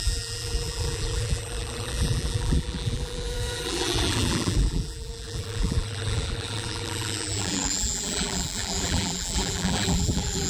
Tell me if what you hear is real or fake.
fake